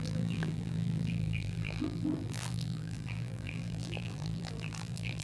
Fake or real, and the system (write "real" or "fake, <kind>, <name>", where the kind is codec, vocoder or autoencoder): fake, vocoder, BigVGAN v2